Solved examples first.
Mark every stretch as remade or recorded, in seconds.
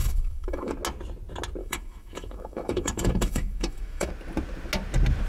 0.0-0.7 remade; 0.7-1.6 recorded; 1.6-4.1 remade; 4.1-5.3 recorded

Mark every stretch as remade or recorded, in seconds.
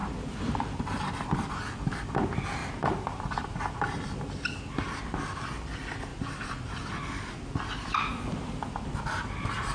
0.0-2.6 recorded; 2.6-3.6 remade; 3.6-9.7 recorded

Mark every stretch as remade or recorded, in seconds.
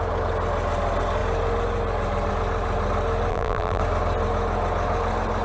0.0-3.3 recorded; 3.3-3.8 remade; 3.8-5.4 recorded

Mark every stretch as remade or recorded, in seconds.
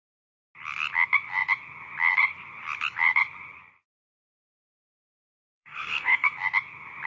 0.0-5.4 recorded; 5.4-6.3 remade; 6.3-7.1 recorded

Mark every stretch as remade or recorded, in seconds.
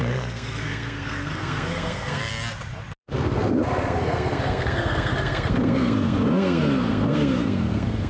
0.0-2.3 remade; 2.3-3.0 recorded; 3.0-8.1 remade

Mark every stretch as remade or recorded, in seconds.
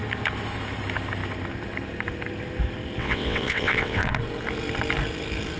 0.0-3.0 recorded; 3.0-4.1 remade; 4.1-5.6 recorded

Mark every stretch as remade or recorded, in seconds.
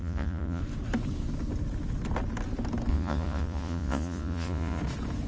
0.0-0.6 remade; 0.6-2.9 recorded; 2.9-4.8 remade; 4.8-5.3 recorded